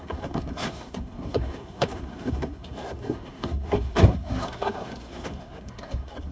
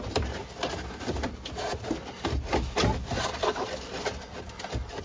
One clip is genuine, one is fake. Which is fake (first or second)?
first